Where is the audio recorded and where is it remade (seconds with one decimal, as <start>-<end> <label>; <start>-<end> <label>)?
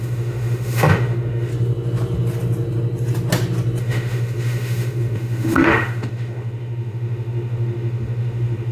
0.0-1.5 remade; 1.5-3.8 recorded; 3.8-8.7 remade